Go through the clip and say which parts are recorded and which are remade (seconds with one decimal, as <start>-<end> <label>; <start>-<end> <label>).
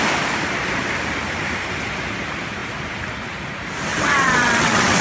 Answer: 0.0-3.9 recorded; 3.9-5.0 remade